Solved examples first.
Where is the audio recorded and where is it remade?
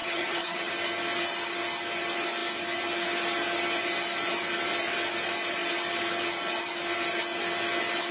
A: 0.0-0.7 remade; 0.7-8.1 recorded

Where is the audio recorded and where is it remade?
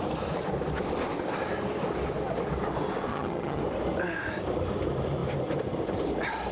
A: 0.0-3.1 recorded; 3.1-3.6 remade; 3.6-6.5 recorded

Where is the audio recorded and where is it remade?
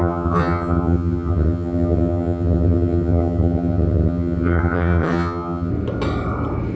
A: 0.0-5.7 remade; 5.7-6.8 recorded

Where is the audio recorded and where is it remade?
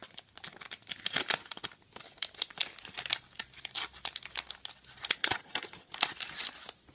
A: 0.0-5.2 recorded; 5.2-5.9 remade; 5.9-6.9 recorded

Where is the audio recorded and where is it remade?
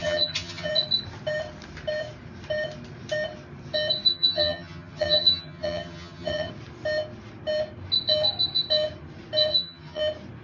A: 0.0-0.7 remade; 0.7-4.1 recorded; 4.1-6.5 remade; 6.5-9.5 recorded; 9.5-10.0 remade; 10.0-10.4 recorded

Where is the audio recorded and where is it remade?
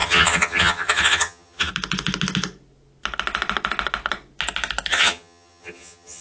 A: 0.0-1.7 remade; 1.7-4.9 recorded; 4.9-6.2 remade